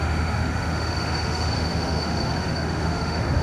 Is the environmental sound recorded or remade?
remade